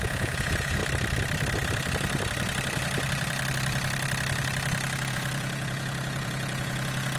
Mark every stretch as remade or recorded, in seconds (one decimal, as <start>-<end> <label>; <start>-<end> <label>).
0.0-0.8 remade; 0.8-5.1 recorded; 5.1-7.2 remade